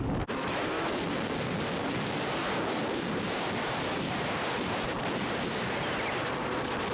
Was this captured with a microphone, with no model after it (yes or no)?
yes